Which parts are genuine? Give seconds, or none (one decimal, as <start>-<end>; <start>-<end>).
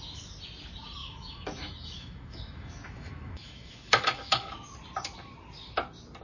0.0-1.0; 4.5-6.2